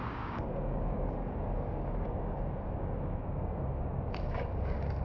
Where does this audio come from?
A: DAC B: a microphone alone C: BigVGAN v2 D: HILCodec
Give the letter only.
A